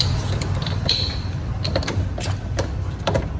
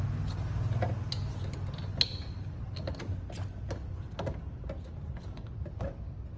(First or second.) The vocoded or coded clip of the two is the first